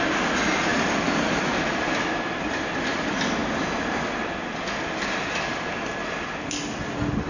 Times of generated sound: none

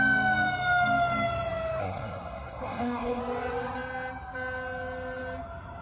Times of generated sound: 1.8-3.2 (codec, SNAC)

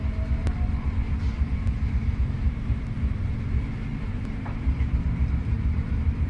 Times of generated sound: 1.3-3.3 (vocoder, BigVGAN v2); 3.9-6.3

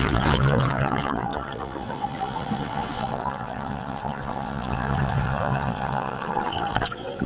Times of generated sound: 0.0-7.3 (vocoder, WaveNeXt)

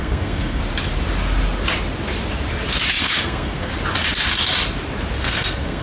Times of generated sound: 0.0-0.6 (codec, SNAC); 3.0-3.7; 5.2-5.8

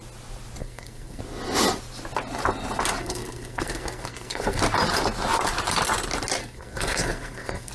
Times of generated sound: 0.6-1.2 (codec, SNAC); 3.0-4.6; 6.4-7.7